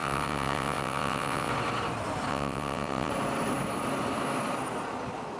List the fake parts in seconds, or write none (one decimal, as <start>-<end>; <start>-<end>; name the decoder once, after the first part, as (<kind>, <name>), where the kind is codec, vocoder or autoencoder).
0.0-1.5 (vocoder, WaveNeXt); 2.3-3.1